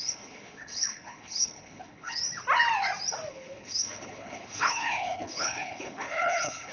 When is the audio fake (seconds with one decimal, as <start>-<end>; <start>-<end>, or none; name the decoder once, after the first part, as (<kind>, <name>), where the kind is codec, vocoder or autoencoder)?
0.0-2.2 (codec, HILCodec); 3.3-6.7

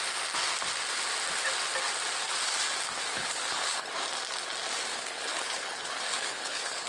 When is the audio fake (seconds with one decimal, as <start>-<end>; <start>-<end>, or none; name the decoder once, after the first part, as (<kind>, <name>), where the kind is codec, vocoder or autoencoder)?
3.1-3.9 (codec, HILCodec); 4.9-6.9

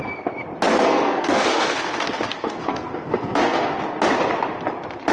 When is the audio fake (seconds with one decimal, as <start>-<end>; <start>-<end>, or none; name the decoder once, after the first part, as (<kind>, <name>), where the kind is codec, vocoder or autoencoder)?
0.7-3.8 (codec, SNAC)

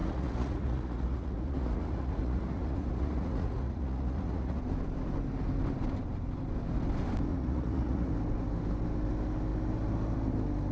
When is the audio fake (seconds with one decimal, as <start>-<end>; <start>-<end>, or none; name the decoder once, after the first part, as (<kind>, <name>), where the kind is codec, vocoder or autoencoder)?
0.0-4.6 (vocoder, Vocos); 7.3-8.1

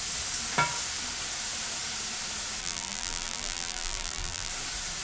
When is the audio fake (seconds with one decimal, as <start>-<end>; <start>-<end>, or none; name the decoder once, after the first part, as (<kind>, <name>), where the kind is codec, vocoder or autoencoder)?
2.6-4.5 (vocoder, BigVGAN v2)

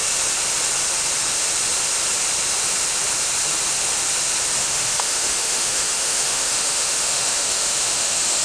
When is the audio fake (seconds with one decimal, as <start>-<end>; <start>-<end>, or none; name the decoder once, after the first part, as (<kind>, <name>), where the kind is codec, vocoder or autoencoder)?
4.6-8.4 (autoencoder, DAC-VAE)

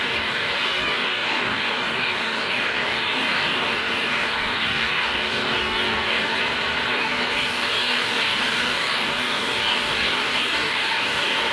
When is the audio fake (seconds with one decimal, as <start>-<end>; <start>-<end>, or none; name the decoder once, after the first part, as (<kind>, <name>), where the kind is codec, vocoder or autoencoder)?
0.0-6.4 (codec, DAC); 6.9-11.5